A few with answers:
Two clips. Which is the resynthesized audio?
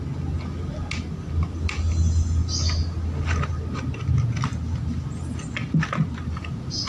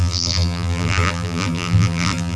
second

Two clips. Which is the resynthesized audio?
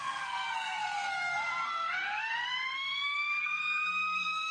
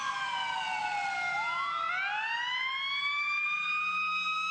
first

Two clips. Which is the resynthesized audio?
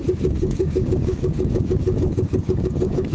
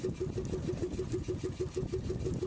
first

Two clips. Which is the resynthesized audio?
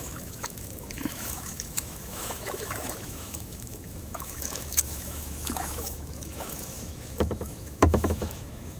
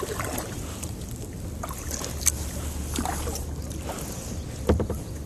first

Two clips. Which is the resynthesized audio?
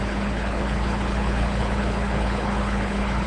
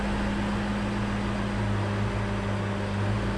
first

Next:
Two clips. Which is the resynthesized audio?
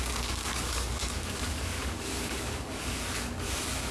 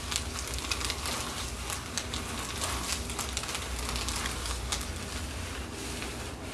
first